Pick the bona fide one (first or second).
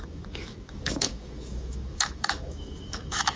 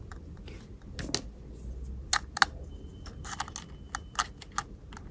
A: second